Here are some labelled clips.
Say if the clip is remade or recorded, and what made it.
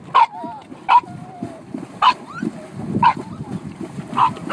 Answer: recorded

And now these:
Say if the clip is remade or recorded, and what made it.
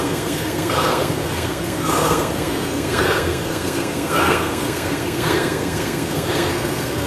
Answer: remade, codec, SNAC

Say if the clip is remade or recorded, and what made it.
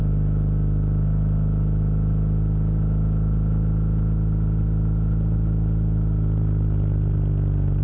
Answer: recorded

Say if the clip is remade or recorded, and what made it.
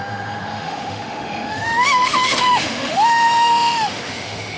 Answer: remade, autoencoder, DAC-VAE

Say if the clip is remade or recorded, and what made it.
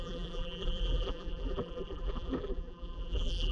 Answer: remade, vocoder, BigVGAN v2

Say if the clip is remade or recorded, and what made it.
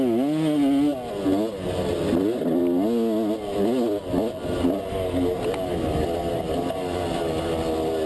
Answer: recorded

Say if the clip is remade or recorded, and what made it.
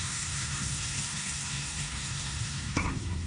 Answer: remade, codec, SNAC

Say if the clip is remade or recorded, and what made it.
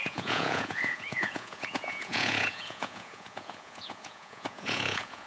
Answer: remade, vocoder, Vocos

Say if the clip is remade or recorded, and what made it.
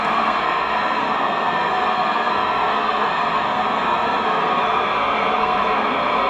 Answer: remade, codec, SNAC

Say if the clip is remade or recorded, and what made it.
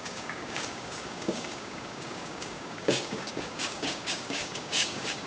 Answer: remade, codec, DAC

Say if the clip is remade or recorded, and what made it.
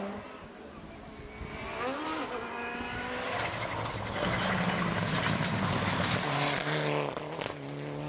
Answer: recorded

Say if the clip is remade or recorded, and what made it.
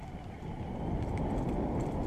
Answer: recorded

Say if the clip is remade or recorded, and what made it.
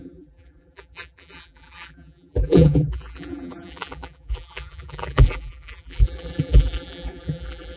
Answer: remade, vocoder, BigVGAN v2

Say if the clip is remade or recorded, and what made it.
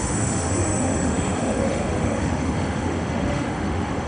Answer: remade, autoencoder, DAC-VAE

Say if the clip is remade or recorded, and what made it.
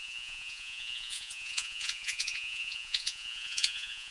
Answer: remade, vocoder, Vocos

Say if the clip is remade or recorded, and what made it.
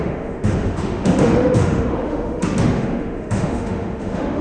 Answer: remade, autoencoder, DAC-VAE